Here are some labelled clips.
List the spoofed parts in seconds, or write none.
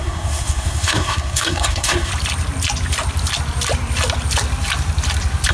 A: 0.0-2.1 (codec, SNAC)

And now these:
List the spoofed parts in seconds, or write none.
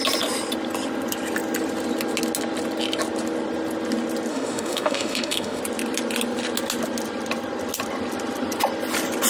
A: 4.3-5.6 (autoencoder, DAC-VAE)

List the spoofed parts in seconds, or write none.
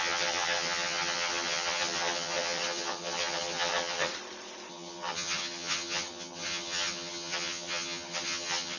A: 0.0-4.1 (vocoder, HiFi-GAN); 4.7-8.8